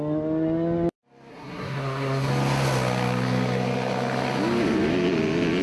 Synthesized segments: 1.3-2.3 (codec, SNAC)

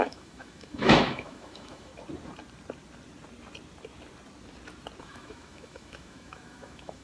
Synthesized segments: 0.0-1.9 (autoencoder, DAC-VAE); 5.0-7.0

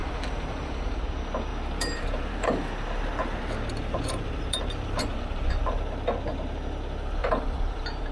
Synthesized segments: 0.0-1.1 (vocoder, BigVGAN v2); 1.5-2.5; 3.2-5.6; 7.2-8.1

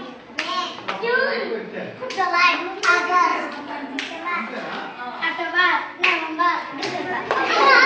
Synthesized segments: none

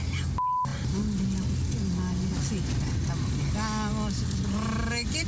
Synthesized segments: none